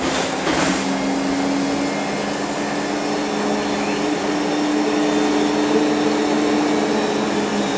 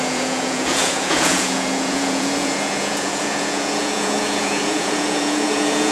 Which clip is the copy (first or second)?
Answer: second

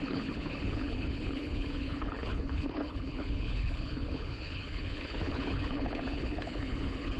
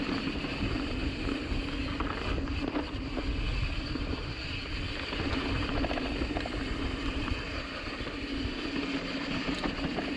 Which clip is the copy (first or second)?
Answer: first